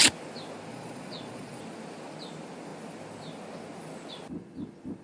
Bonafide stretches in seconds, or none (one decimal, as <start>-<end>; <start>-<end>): 0.0-0.7; 1.6-5.0